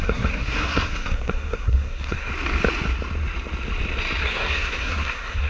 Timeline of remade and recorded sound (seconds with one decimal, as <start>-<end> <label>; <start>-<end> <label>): 0.0-2.3 remade; 2.3-4.2 recorded; 4.2-5.5 remade